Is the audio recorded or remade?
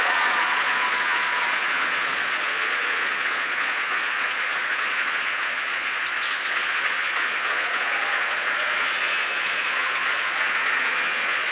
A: remade